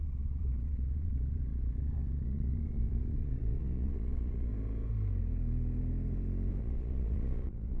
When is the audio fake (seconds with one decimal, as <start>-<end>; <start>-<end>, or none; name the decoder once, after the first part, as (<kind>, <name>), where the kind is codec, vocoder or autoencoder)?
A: 0.0-4.5 (vocoder, Vocos); 6.6-7.8